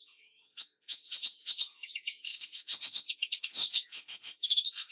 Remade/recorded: remade